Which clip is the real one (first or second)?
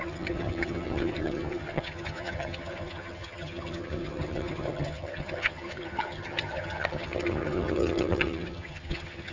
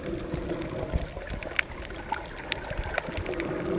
second